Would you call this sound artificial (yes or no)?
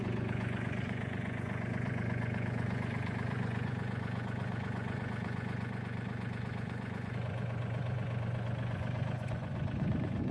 yes